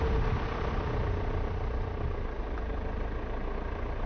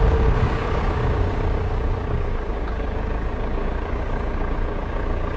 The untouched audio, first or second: first